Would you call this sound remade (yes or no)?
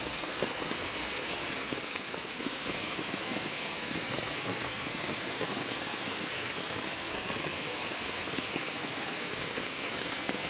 yes